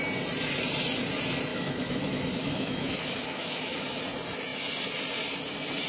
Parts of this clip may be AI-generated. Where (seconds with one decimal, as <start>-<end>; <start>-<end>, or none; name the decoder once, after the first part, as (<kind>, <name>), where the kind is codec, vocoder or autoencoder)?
1.5-4.0 (autoencoder, DAC-VAE)